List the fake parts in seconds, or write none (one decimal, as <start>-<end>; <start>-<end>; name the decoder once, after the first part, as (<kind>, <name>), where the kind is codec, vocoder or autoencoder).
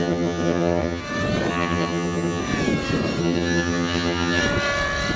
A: 0.0-1.0 (vocoder, HiFi-GAN); 1.5-2.4; 3.2-4.4